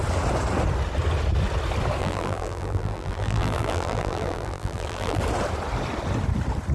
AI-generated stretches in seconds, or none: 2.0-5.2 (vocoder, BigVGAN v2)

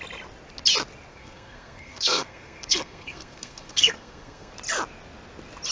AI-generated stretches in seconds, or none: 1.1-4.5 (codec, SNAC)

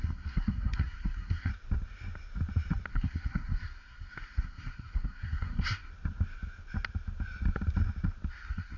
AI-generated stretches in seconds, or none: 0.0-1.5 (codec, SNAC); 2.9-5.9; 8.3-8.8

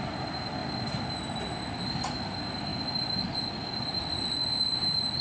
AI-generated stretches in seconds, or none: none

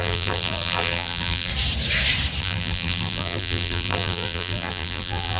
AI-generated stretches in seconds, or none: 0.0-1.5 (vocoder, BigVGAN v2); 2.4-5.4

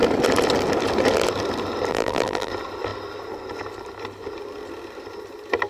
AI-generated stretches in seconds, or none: 1.9-2.5 (vocoder, BigVGAN v2)

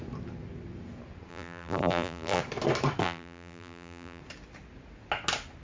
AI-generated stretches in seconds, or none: 1.3-2.4 (vocoder, BigVGAN v2); 3.0-4.2